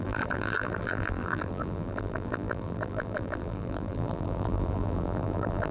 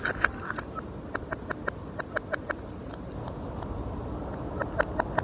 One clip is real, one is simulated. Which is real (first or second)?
second